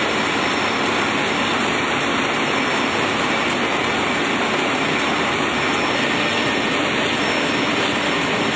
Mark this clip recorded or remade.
recorded